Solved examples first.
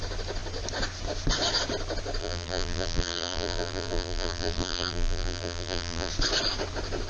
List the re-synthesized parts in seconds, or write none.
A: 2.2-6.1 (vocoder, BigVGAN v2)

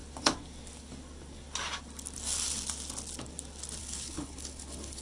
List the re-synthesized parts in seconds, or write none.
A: 3.8-5.0 (codec, HILCodec)

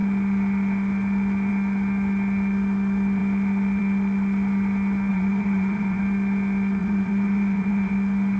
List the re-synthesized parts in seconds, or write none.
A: 5.1-6.0 (vocoder, Vocos); 6.8-7.9